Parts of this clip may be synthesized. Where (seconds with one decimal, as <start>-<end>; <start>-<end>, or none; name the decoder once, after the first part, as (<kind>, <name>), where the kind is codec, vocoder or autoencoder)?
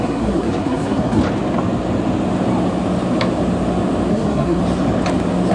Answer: 0.0-1.2 (codec, SNAC); 4.1-4.6